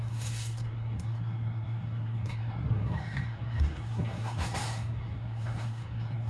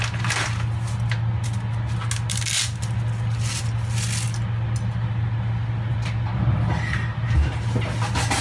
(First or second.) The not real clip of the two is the first